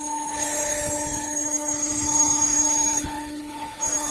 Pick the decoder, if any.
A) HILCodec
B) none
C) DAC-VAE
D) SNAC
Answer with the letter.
A